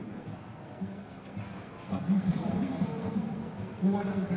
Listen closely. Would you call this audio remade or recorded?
remade